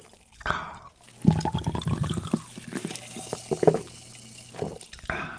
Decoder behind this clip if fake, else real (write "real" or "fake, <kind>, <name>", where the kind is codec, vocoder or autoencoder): real